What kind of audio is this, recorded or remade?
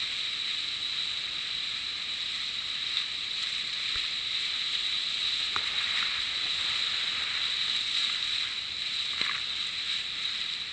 recorded